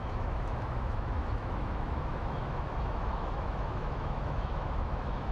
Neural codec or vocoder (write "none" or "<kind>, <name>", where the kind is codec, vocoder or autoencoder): autoencoder, DAC-VAE